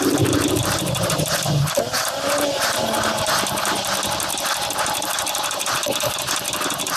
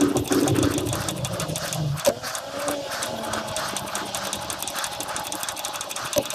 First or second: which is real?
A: second